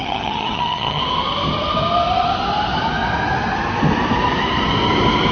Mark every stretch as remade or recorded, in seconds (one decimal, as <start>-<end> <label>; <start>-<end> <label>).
0.0-1.0 remade; 1.0-5.3 recorded